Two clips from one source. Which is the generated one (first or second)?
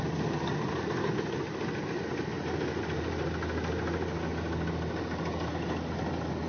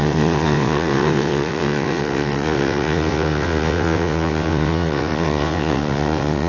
second